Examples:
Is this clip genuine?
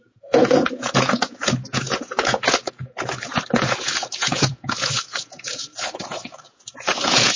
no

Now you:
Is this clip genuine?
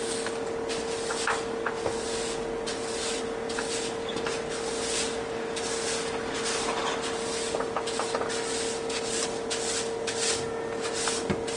yes